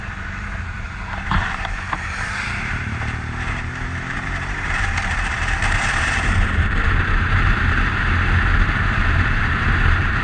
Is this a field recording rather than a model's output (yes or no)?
no